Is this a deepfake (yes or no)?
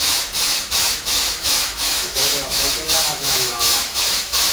yes